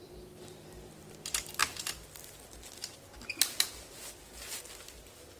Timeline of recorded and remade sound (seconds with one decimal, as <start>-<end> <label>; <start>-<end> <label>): 0.0-5.4 recorded